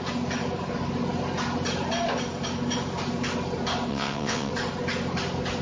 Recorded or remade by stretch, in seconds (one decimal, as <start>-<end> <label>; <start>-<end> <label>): 0.0-3.9 recorded; 3.9-4.5 remade; 4.5-5.6 recorded